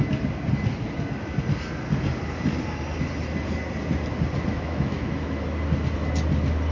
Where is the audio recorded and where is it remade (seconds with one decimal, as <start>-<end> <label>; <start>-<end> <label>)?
0.0-4.5 recorded; 4.5-5.4 remade; 5.4-6.7 recorded